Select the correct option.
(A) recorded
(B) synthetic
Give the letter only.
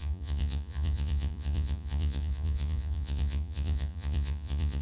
B